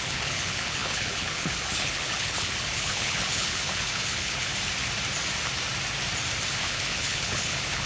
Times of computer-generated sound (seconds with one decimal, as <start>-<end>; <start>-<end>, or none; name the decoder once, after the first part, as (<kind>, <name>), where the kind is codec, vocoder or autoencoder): 0.0-4.5 (codec, HILCodec); 6.6-7.9